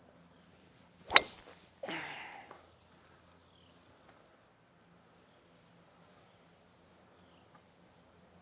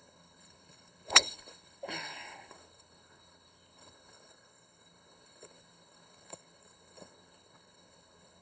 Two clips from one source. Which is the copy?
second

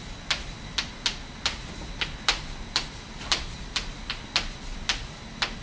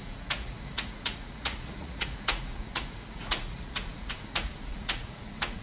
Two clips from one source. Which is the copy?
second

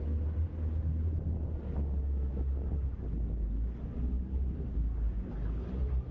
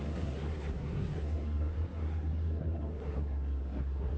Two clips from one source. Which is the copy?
second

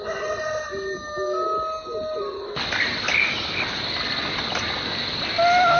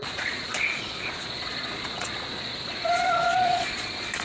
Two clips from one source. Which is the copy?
second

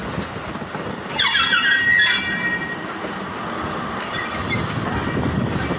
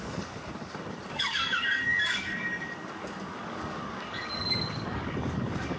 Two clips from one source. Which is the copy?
second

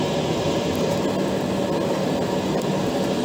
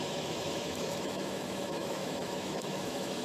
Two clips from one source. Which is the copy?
second